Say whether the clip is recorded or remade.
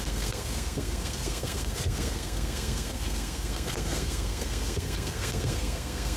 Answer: remade